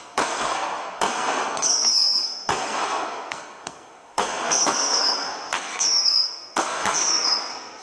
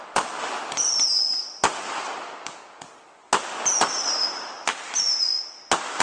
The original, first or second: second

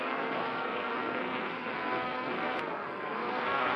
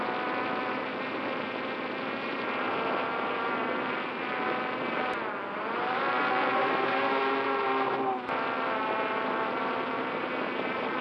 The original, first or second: second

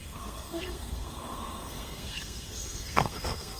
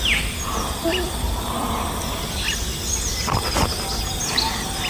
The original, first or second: second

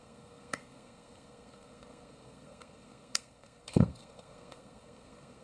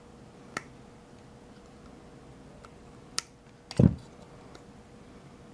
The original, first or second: second